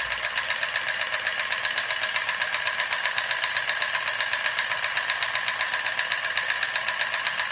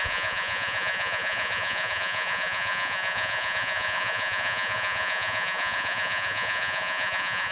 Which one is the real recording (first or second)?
first